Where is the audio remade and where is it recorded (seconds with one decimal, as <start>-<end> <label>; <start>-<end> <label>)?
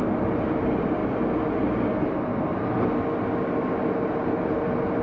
0.0-1.0 remade; 1.0-4.0 recorded; 4.0-5.0 remade